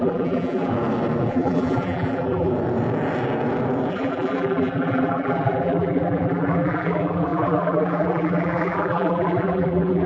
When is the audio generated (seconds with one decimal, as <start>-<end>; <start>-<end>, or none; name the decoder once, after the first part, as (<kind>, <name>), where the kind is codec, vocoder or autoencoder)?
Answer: 0.0-0.7 (vocoder, BigVGAN v2); 1.3-2.5; 3.9-10.1